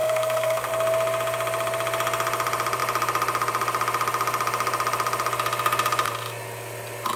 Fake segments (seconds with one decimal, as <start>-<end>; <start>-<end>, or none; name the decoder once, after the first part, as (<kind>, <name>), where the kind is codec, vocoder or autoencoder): 0.0-0.7 (codec, SNAC)